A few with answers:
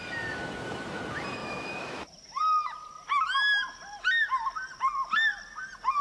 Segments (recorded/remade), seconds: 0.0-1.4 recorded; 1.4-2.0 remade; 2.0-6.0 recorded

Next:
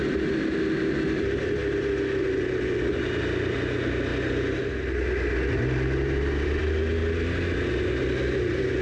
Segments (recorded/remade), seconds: 0.0-8.8 recorded

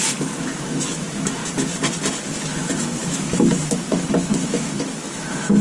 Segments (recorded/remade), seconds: 0.0-1.4 remade; 1.4-2.3 recorded; 2.3-5.6 remade

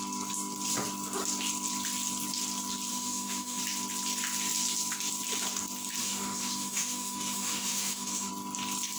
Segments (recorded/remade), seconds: 0.0-2.9 recorded; 2.9-3.6 remade; 3.6-6.0 recorded; 6.0-8.3 remade; 8.3-9.0 recorded

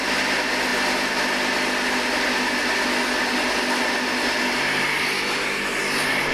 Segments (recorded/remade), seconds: 0.0-6.3 recorded

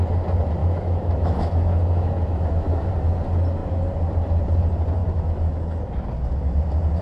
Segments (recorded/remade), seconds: 0.0-0.6 recorded; 0.6-2.9 remade; 2.9-5.0 recorded; 5.0-5.8 remade; 5.8-7.0 recorded

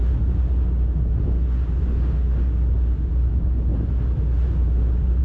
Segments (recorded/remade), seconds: 0.0-5.2 recorded